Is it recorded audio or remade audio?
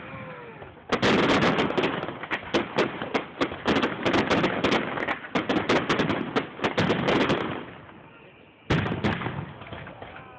recorded